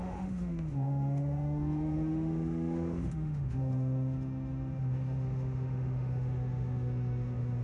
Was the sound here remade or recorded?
remade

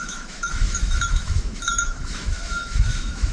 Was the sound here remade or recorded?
remade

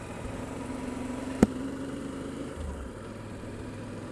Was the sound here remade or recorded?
remade